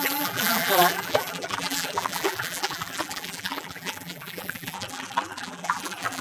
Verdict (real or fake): fake